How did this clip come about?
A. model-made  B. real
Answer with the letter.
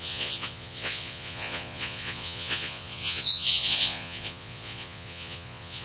A